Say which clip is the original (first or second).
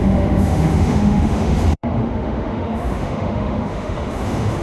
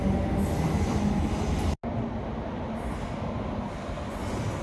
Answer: second